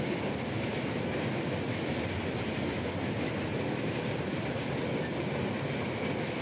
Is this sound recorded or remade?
recorded